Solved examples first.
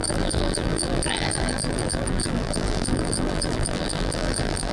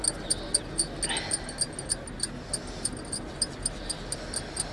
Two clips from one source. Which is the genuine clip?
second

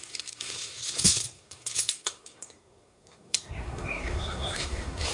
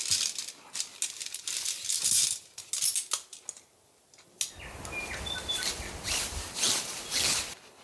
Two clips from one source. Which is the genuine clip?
second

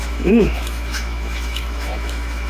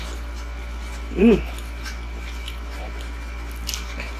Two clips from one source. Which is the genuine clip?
second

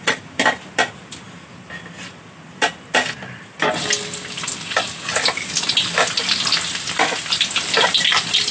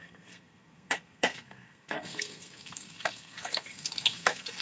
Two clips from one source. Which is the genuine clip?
first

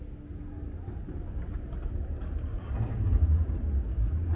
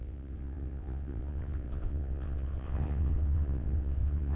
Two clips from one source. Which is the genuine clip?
first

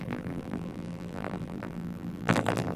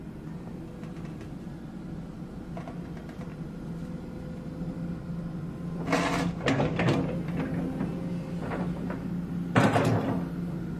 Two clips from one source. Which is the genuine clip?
second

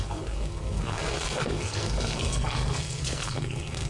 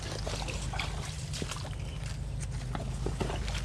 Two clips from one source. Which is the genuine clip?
second